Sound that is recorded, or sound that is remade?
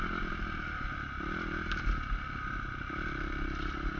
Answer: recorded